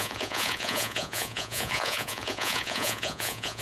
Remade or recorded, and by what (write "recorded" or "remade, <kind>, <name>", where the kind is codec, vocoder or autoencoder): remade, vocoder, Vocos